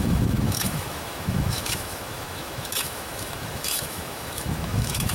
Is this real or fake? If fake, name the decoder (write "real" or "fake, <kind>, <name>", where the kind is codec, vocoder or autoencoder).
fake, autoencoder, DAC-VAE